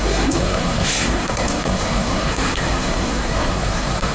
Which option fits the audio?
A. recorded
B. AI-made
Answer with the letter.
B